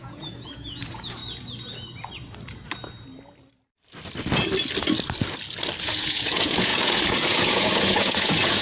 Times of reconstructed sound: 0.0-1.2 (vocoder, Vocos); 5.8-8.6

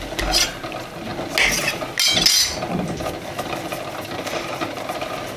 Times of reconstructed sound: none

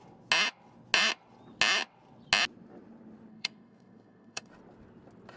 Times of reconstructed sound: 3.3-4.5 (codec, SNAC)